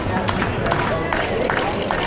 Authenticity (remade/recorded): recorded